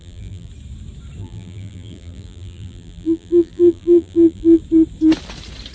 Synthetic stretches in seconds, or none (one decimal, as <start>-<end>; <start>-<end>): 0.0-0.5; 1.2-4.6